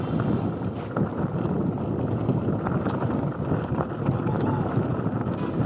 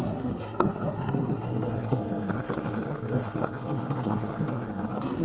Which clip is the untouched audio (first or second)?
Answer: first